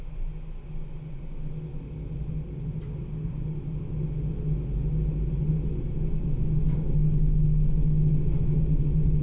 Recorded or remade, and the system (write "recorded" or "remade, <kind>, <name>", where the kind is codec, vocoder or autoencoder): recorded